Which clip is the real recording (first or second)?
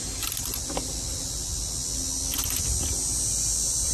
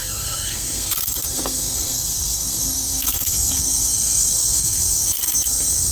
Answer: first